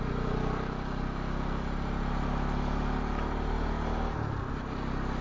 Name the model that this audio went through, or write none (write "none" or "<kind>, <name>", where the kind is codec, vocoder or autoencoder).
none